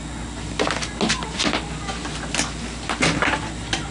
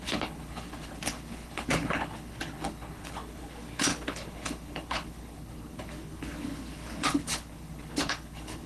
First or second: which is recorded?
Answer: first